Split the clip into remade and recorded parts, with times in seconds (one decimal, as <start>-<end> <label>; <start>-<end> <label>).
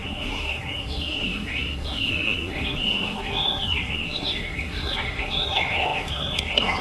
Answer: 0.0-6.8 remade